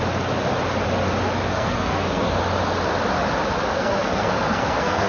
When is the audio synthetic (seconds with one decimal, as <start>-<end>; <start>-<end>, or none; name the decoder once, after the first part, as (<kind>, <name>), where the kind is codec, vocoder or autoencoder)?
1.5-2.3 (codec, SNAC); 3.7-5.1